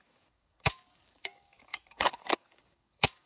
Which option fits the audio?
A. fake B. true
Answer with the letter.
A